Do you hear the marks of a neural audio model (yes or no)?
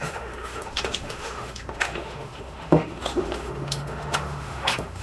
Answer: yes